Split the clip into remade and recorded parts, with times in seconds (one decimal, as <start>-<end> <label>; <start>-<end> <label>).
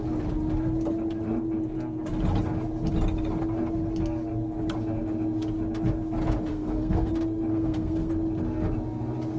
0.0-6.5 recorded; 6.5-7.1 remade; 7.1-7.5 recorded; 7.5-8.1 remade; 8.1-9.4 recorded